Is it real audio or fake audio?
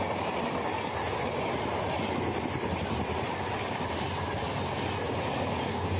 real